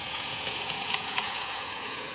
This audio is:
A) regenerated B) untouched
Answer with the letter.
A